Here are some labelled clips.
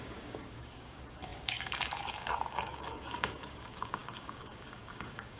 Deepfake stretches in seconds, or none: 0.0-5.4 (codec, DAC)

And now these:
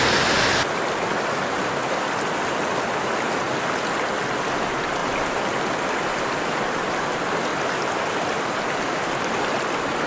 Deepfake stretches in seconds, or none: none

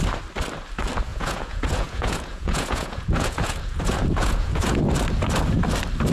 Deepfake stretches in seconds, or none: 1.1-4.8 (vocoder, Vocos)

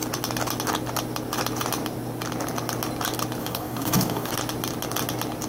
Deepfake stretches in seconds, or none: 3.4-4.3 (codec, DAC)

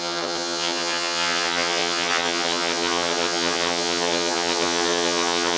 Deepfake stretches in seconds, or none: 0.0-5.6 (vocoder, HiFi-GAN)

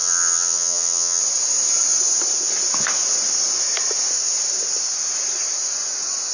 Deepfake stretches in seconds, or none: 0.0-1.2 (vocoder, HiFi-GAN)

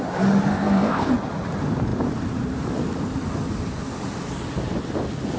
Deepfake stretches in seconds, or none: 0.5-1.1 (codec, ZipCodec)